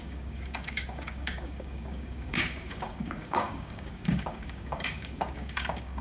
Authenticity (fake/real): fake